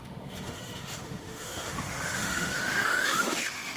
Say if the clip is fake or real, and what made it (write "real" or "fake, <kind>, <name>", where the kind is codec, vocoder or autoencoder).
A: fake, autoencoder, DAC-VAE